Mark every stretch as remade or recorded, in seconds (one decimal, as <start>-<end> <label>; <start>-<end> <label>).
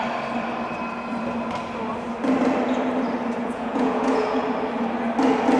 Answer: 0.0-3.4 recorded; 3.4-4.4 remade; 4.4-5.6 recorded